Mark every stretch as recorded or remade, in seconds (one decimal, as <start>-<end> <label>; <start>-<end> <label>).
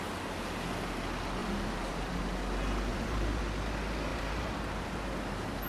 0.0-1.4 recorded; 1.4-2.2 remade; 2.2-2.9 recorded; 2.9-3.4 remade; 3.4-4.1 recorded; 4.1-5.0 remade; 5.0-5.7 recorded